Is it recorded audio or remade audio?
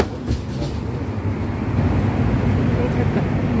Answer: recorded